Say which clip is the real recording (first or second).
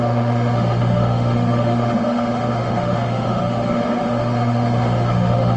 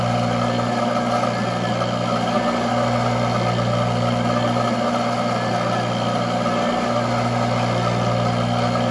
second